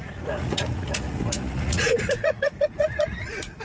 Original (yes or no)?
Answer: no